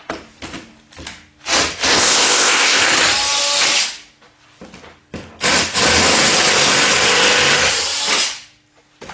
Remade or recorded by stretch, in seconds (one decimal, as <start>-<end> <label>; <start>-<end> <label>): 0.0-1.9 recorded; 1.9-2.8 remade; 2.8-9.1 recorded